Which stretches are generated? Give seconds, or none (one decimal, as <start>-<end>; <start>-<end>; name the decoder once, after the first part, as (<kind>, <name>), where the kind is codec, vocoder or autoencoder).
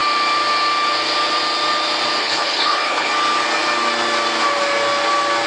2.2-3.1 (codec, HILCodec)